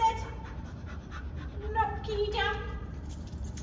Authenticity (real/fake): fake